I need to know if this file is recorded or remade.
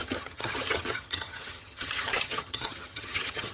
remade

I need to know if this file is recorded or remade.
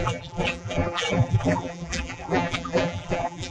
remade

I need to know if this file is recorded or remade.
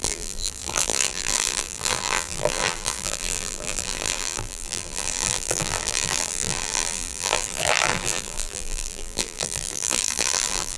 remade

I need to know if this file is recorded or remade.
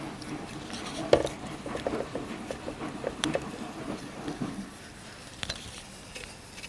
remade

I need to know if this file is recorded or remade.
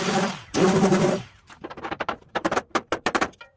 remade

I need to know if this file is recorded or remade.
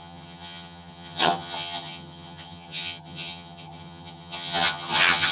remade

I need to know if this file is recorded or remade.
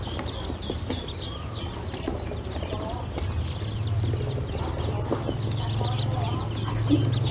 recorded